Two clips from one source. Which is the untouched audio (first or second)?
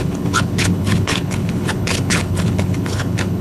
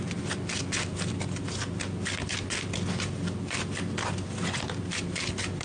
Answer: second